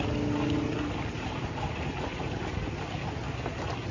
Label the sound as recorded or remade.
recorded